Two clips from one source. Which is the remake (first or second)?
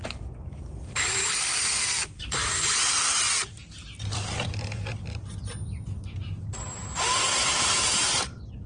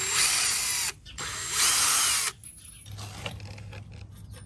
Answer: first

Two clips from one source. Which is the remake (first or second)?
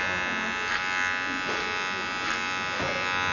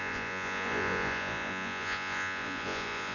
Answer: second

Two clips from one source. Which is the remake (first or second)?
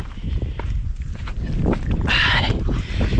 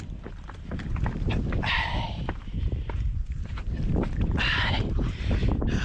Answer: second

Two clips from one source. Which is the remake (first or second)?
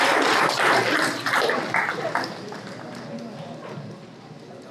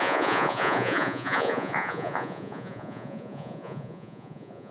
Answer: second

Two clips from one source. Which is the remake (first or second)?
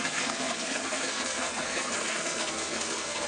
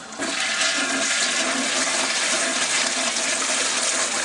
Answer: first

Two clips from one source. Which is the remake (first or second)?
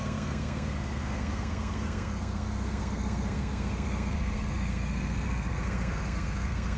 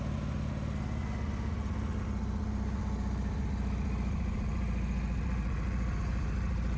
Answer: first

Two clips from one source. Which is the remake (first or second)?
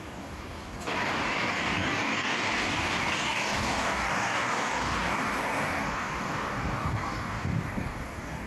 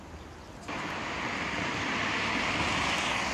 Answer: first